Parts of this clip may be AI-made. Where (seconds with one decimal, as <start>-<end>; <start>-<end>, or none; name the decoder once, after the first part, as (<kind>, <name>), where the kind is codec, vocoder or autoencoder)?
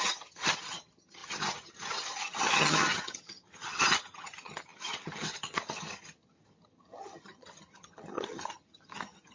0.0-9.3 (vocoder, HiFi-GAN)